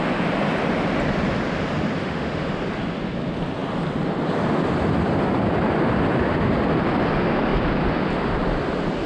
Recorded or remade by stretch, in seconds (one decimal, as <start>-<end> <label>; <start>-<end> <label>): 0.0-2.0 recorded; 2.0-2.5 remade; 2.5-9.1 recorded